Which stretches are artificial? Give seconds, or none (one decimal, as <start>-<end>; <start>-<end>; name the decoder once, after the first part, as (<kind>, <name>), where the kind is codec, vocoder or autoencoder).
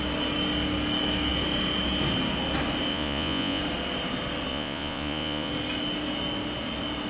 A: 2.9-3.6 (vocoder, Vocos); 4.5-5.5